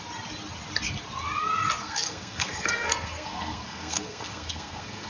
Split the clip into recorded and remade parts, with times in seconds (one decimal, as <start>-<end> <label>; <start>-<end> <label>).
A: 0.0-1.8 recorded; 1.8-5.1 remade